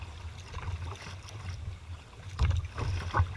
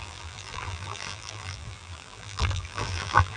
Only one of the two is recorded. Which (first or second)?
first